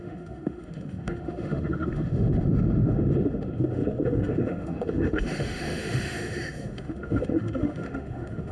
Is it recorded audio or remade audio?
remade